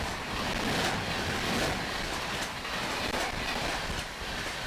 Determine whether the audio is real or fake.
real